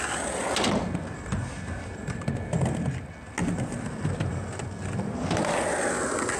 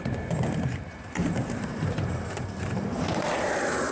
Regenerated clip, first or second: second